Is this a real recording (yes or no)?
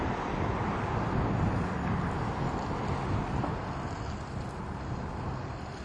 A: yes